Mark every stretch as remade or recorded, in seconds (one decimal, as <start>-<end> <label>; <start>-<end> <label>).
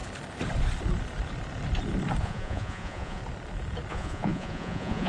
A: 0.0-2.2 recorded; 2.2-3.2 remade; 3.2-3.9 recorded; 3.9-5.1 remade